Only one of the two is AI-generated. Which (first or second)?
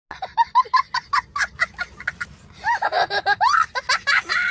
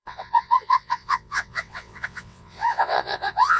second